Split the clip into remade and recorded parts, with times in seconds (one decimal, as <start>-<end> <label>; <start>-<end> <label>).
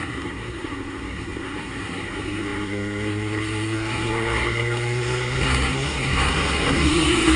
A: 0.0-7.4 remade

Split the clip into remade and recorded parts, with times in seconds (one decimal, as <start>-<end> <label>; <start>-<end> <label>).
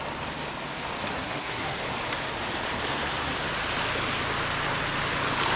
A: 0.0-1.1 recorded; 1.1-1.8 remade; 1.8-5.6 recorded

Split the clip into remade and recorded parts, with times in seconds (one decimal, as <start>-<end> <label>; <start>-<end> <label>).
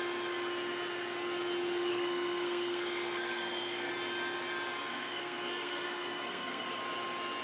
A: 0.0-1.9 recorded; 1.9-3.9 remade; 3.9-4.9 recorded; 4.9-6.8 remade; 6.8-7.4 recorded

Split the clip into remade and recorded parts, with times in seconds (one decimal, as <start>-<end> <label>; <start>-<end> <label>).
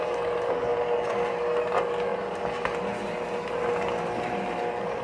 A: 0.0-5.0 recorded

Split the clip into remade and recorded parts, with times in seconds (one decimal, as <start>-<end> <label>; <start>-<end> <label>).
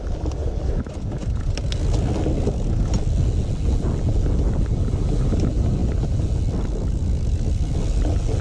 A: 0.0-8.4 recorded